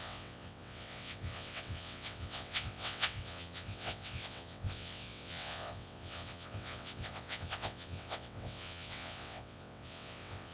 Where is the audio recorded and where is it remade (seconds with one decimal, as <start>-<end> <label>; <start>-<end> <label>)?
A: 0.0-10.5 remade